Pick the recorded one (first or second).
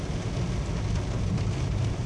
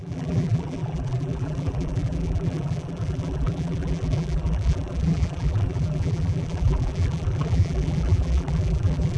first